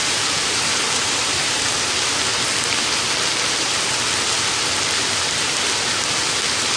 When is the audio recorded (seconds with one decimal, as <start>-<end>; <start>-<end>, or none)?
1.7-6.8